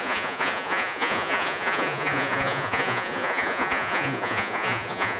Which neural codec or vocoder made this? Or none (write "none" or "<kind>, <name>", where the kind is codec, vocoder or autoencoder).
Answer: vocoder, Vocos